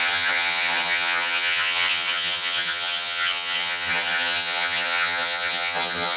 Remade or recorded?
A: remade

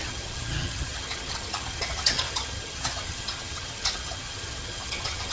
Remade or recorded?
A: remade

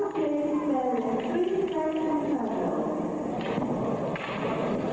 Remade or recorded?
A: recorded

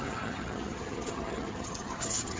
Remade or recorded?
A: remade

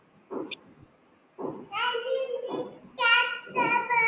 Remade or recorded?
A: recorded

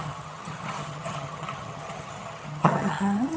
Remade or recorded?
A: remade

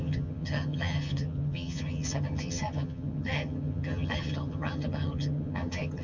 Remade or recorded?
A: remade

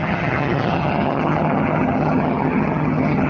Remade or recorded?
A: remade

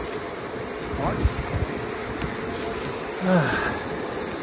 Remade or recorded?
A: recorded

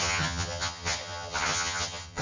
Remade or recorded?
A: remade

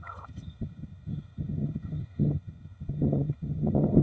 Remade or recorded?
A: remade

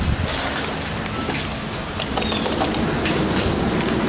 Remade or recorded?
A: recorded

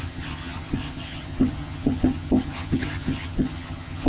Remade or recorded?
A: remade